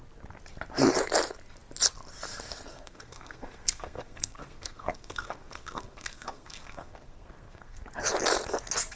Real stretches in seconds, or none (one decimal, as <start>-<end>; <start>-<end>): 0.0-2.7; 7.8-9.0